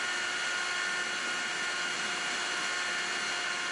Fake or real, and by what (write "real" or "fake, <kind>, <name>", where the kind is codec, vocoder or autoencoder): real